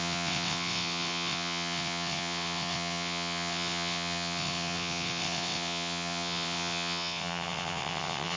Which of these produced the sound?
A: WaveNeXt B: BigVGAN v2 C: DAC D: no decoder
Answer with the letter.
A